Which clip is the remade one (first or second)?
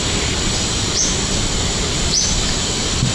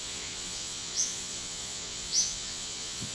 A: second